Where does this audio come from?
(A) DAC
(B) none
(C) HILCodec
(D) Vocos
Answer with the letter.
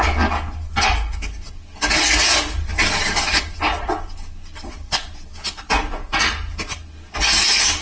B